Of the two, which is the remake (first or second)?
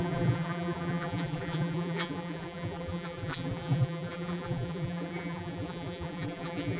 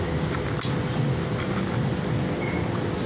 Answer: first